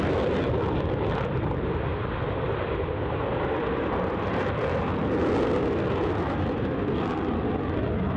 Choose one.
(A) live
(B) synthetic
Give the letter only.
A